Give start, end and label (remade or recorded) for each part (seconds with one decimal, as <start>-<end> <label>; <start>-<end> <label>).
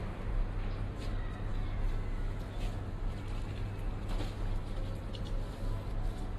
0.0-6.4 recorded